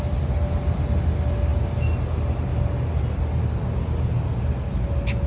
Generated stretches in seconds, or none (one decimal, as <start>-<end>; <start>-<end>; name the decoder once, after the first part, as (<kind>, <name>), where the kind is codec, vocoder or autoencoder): none